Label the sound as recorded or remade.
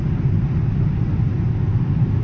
recorded